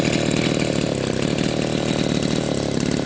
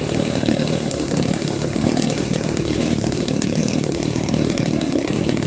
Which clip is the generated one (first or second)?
second